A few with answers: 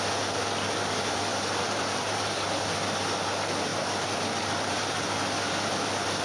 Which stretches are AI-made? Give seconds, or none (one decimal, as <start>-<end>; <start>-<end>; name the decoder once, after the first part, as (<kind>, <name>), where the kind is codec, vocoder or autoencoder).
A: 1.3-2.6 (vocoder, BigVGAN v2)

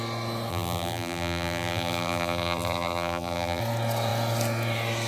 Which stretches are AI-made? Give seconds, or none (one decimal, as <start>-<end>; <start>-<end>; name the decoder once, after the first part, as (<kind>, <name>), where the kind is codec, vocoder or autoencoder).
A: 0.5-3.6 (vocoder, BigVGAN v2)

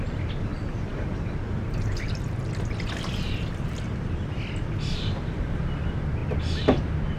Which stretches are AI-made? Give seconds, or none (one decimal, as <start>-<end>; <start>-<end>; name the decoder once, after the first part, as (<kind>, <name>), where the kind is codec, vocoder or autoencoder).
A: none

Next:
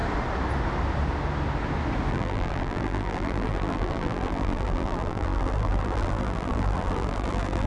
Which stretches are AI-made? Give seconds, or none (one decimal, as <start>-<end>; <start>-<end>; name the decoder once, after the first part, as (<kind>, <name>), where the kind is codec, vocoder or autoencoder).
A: 2.1-7.7 (vocoder, BigVGAN v2)

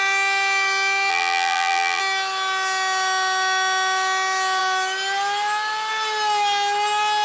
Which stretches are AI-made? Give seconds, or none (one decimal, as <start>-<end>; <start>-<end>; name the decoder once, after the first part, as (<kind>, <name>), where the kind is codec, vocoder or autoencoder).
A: 1.1-2.0 (vocoder, BigVGAN v2)

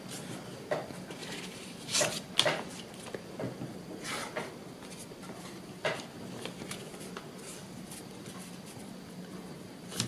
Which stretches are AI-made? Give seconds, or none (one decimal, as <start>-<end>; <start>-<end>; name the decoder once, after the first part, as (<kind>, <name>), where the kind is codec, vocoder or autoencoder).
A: 1.2-1.8 (vocoder, BigVGAN v2)

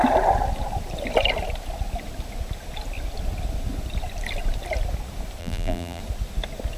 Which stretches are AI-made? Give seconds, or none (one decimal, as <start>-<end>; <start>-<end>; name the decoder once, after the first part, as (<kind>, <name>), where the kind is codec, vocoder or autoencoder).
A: 5.4-6.0 (vocoder, BigVGAN v2)